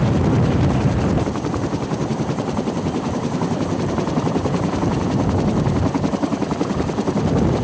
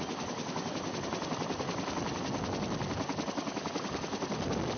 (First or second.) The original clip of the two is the second